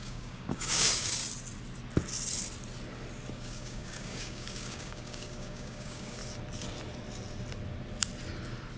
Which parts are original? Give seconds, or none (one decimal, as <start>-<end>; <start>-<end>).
1.2-3.3; 6.2-8.8